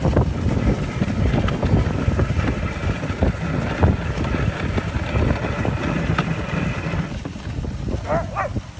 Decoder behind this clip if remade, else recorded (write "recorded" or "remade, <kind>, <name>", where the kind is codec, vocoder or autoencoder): recorded